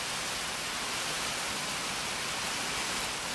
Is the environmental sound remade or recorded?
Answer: recorded